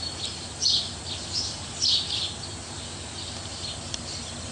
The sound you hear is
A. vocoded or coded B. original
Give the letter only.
B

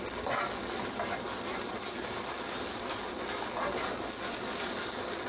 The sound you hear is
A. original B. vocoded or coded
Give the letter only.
A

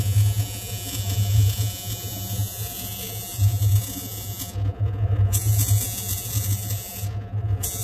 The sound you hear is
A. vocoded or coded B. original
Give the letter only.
A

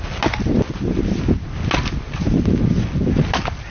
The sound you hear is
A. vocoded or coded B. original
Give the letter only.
B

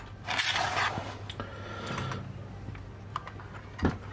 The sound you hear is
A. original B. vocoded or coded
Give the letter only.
A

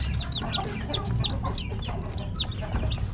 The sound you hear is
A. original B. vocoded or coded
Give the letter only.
A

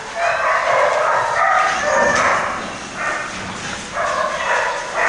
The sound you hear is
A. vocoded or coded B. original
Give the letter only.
B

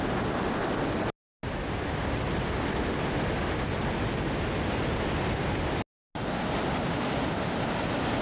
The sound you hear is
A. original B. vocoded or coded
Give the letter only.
A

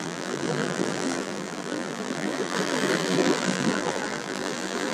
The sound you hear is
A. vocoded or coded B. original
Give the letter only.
A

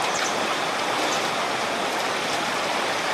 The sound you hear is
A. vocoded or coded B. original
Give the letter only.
B